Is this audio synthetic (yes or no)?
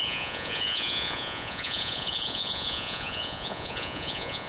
yes